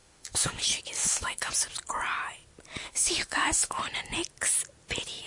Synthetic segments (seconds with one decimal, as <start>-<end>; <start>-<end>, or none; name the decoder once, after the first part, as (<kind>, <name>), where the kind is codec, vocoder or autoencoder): 0.0-0.6 (autoencoder, DAC-VAE); 1.0-1.5; 2.8-3.8